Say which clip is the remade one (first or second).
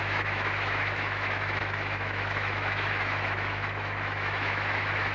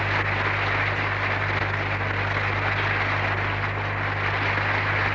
first